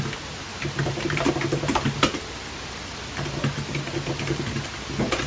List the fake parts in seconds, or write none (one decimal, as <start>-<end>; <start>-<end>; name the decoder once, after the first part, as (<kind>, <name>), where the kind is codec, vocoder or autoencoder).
0.5-1.3 (vocoder, BigVGAN v2)